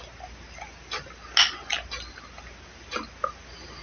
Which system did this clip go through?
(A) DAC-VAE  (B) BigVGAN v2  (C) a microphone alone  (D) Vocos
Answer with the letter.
C